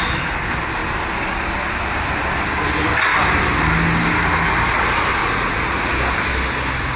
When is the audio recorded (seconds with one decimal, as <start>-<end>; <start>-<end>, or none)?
0.0-5.2; 5.9-7.0